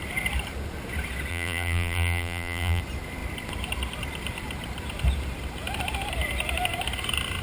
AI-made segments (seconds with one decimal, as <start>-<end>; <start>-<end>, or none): 1.3-2.8